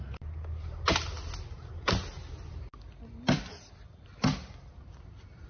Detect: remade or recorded recorded